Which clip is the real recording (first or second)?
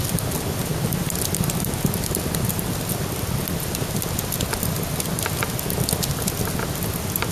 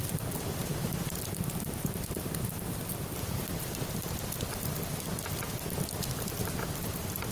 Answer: first